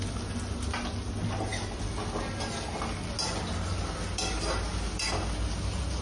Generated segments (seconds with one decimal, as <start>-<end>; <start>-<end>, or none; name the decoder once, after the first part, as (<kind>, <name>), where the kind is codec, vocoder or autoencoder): none